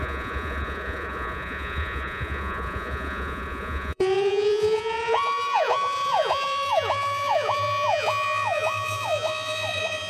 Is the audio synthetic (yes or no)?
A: yes